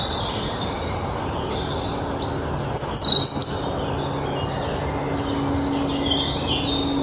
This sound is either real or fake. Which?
real